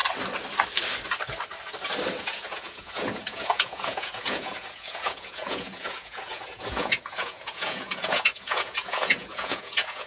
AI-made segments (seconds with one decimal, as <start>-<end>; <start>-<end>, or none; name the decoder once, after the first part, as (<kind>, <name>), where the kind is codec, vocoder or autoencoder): 2.2-10.1 (vocoder, Vocos)